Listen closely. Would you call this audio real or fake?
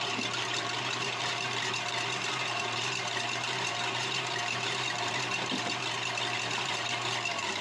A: fake